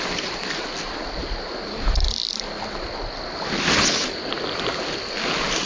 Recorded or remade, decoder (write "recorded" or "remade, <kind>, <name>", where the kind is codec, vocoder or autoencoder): recorded